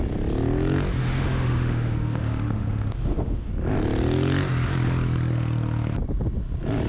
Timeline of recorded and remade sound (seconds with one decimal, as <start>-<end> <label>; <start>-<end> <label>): 0.0-1.0 recorded; 1.0-3.5 remade; 3.5-6.9 recorded